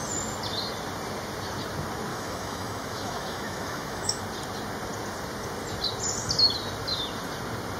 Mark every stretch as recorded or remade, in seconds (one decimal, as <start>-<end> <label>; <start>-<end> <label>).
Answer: 0.0-2.1 recorded; 2.1-4.2 remade; 4.2-7.8 recorded